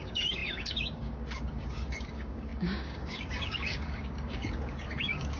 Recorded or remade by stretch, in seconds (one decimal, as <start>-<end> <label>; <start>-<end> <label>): 0.0-5.4 remade